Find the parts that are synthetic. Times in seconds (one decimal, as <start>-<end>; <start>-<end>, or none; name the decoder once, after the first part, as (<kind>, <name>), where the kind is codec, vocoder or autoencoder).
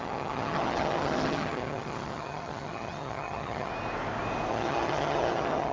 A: 0.0-3.7 (vocoder, HiFi-GAN); 4.5-5.7